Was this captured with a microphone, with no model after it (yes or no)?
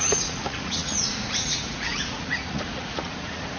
no